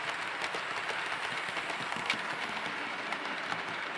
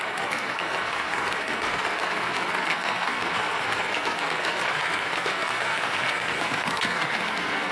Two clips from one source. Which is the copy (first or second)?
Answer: second